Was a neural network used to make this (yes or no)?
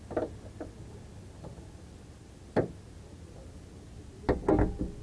no